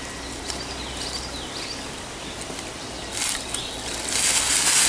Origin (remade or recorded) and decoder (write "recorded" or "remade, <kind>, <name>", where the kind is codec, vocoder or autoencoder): recorded